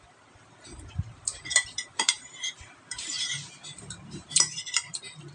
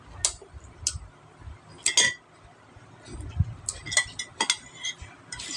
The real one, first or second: second